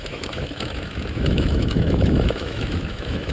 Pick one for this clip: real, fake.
fake